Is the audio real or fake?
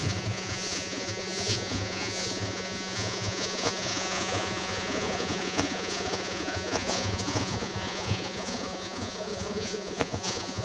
fake